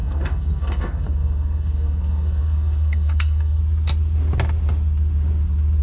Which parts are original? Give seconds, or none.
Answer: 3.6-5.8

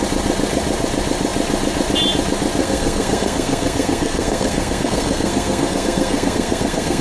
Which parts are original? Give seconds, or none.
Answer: 0.0-2.6

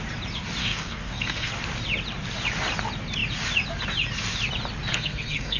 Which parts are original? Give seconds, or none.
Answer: 0.0-0.6; 1.5-4.9

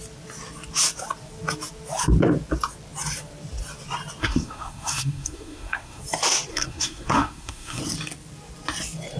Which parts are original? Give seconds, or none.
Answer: 0.0-4.2; 6.0-6.5; 7.8-9.2

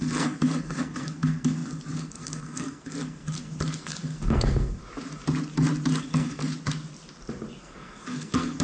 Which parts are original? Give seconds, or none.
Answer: 4.8-6.0; 6.4-7.6